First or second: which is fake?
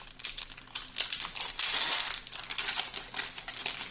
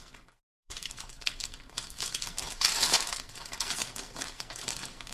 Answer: second